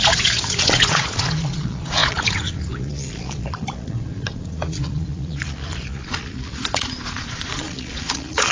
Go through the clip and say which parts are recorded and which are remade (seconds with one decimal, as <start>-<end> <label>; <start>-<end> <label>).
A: 0.0-8.5 remade